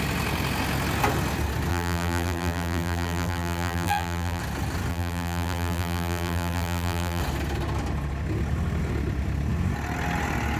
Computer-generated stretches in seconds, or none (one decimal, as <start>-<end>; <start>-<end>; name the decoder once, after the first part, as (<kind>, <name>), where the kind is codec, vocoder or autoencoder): 1.7-4.4 (vocoder, BigVGAN v2); 4.9-7.2